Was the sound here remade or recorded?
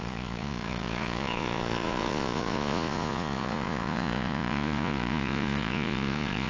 remade